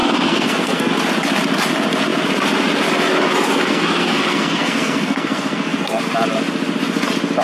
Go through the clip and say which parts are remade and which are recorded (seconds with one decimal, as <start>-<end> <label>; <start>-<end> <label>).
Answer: 0.0-0.9 remade; 0.9-3.5 recorded; 3.5-6.0 remade; 6.0-7.4 recorded